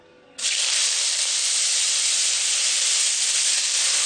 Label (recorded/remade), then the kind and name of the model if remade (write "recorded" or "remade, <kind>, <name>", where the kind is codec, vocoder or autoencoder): recorded